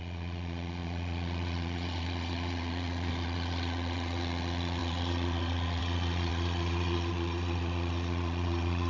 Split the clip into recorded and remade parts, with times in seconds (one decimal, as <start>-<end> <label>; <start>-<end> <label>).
0.0-8.9 remade